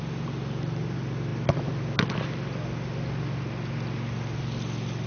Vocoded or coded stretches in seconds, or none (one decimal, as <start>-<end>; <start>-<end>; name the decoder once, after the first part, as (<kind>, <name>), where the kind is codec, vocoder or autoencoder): none